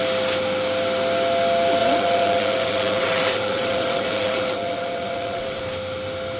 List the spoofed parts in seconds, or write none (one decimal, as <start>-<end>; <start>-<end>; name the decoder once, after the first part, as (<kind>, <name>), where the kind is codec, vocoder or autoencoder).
1.8-5.6 (vocoder, WaveNeXt)